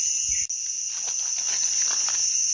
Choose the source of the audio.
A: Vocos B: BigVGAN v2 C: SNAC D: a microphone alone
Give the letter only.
D